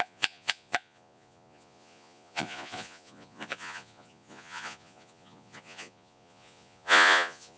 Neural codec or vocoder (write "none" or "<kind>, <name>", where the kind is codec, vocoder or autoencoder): vocoder, Vocos